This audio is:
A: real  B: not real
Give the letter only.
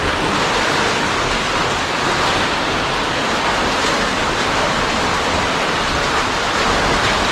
B